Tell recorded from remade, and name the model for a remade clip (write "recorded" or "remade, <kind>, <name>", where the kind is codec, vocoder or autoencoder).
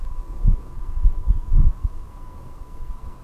remade, codec, SNAC